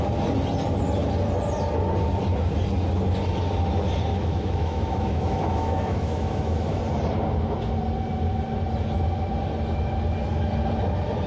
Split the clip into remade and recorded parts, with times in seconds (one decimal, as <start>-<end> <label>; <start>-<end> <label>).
0.0-4.1 recorded; 4.1-6.8 remade; 6.8-11.3 recorded